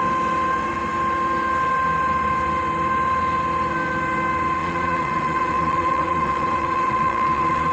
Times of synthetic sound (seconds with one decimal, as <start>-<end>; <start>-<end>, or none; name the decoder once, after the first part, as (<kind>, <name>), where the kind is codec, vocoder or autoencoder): 4.6-7.7 (vocoder, Vocos)

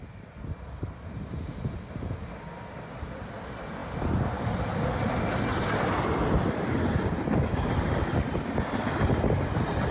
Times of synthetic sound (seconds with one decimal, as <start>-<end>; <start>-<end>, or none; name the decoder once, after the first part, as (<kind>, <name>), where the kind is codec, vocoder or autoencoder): none

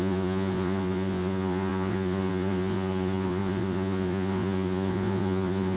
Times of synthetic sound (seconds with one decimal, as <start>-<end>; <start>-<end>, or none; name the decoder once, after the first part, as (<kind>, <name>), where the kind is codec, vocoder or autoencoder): 0.0-5.8 (vocoder, Vocos)